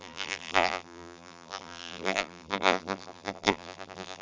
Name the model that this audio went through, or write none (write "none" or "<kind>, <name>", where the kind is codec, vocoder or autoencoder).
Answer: vocoder, BigVGAN v2